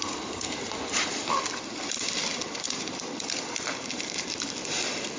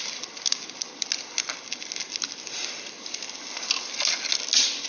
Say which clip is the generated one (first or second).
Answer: first